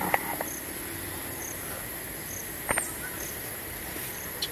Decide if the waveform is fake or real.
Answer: real